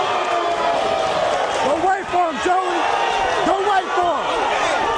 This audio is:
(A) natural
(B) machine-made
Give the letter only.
A